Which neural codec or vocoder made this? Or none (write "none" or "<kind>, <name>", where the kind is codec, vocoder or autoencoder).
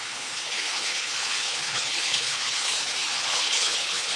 codec, HILCodec